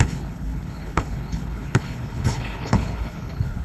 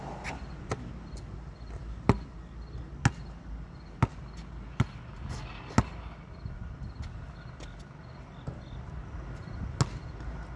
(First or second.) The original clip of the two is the second